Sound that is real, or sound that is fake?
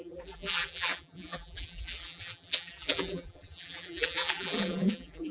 fake